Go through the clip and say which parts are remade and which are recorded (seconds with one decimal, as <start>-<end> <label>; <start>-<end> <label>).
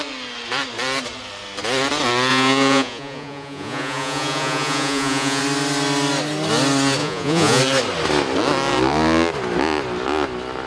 0.0-2.3 recorded; 2.3-5.4 remade; 5.4-7.0 recorded; 7.0-7.6 remade; 7.6-10.7 recorded